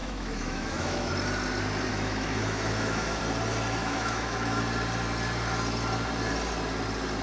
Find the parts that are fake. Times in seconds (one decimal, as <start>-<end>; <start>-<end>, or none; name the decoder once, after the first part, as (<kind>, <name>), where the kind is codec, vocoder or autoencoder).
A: 0.0-1.1 (autoencoder, DAC-VAE); 1.9-3.2; 3.8-4.6